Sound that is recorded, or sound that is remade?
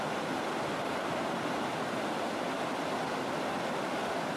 recorded